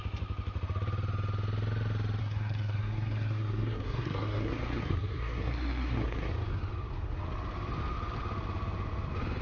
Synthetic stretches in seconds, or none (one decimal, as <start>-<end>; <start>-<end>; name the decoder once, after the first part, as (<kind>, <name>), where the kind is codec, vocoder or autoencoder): 2.2-6.3 (codec, SNAC)